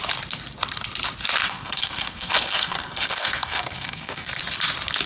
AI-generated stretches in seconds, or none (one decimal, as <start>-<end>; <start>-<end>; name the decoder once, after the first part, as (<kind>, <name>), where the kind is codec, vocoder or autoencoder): 1.4-4.3 (codec, SNAC)

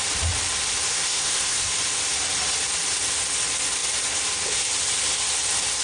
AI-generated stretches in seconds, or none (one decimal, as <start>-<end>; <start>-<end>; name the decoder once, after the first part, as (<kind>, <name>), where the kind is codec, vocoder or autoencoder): 0.9-1.7 (codec, SNAC)

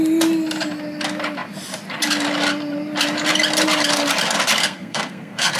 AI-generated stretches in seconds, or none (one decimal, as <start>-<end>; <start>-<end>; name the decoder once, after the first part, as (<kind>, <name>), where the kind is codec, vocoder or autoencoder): 4.6-5.6 (codec, SNAC)

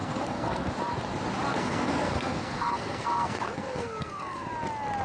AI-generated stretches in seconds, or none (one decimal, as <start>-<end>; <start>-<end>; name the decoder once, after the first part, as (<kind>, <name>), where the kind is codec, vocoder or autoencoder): 0.0-0.7 (codec, SNAC); 1.5-4.5